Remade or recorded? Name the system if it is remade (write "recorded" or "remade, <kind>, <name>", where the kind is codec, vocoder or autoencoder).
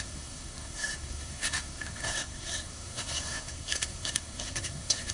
remade, codec, SNAC